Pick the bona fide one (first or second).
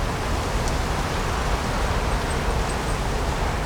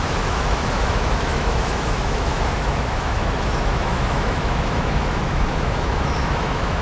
first